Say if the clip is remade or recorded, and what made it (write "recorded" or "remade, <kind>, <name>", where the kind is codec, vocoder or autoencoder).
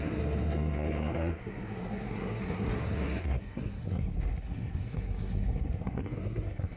remade, codec, SNAC